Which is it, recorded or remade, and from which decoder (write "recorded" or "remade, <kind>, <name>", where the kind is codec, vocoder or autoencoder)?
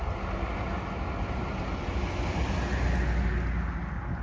recorded